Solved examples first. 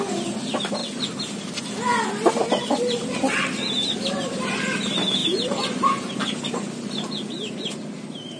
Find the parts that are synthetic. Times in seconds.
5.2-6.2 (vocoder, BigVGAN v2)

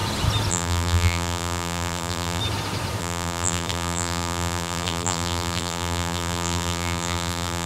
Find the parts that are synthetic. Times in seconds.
0.5-2.4 (vocoder, BigVGAN v2); 3.0-7.7

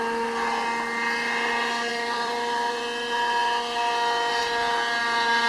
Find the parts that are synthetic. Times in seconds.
1.9-2.8 (vocoder, BigVGAN v2)